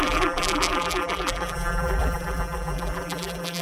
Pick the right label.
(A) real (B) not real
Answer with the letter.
B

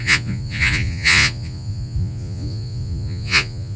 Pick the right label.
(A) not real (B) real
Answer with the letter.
A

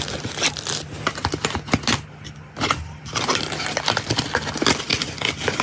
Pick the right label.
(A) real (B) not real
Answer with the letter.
A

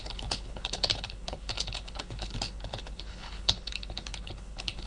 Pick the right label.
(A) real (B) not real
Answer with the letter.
B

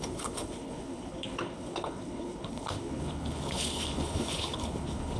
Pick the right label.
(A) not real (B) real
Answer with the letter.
A